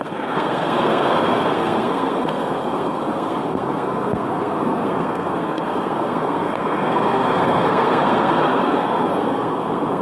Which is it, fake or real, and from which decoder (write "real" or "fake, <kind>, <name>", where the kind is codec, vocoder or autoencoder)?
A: fake, codec, SNAC